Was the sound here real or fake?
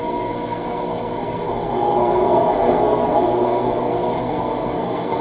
fake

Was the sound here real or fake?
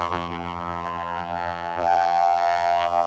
fake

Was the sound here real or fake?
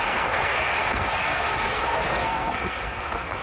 fake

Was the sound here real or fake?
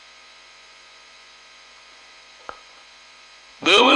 fake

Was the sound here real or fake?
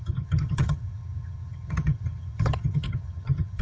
fake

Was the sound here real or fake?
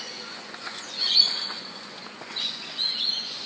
fake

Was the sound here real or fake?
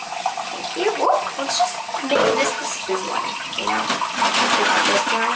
real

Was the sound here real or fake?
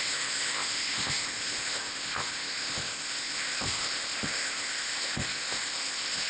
fake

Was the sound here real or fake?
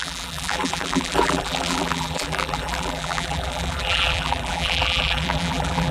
fake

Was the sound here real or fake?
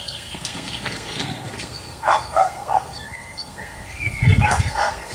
fake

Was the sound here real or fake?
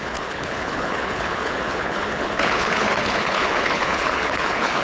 fake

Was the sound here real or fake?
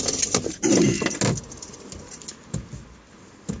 real